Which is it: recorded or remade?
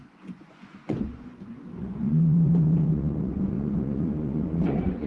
remade